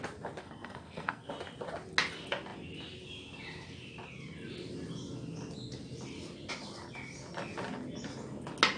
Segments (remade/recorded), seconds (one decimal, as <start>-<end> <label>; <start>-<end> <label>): 0.0-0.4 recorded; 0.4-1.3 remade; 1.3-8.8 recorded